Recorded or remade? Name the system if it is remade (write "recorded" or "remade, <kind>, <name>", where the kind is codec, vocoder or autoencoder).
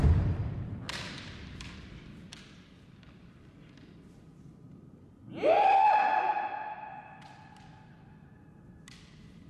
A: recorded